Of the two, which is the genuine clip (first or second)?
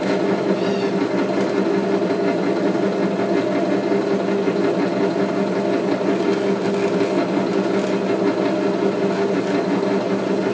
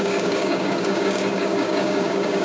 first